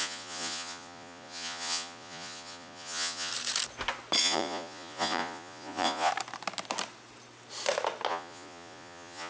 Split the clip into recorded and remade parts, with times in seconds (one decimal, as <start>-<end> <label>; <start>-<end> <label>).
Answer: 0.0-3.3 remade; 3.3-4.2 recorded; 4.2-6.1 remade; 6.1-8.1 recorded; 8.1-9.3 remade